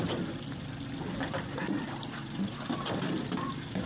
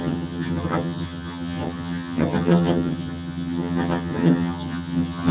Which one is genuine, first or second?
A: first